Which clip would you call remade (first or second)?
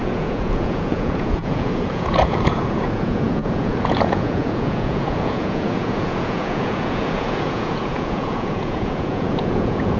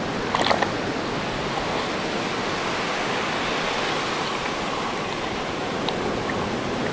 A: first